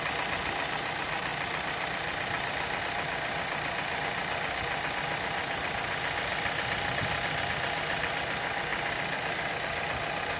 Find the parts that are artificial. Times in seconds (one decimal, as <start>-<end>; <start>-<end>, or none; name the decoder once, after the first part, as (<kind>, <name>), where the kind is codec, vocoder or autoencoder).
none